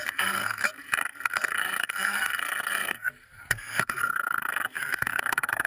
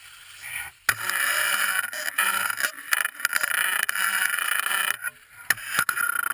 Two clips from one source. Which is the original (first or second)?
second